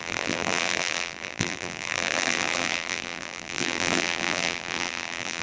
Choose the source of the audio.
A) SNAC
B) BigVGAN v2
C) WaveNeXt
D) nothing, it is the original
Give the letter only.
B